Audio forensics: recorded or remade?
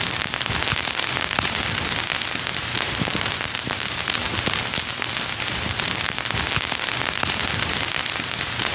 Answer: remade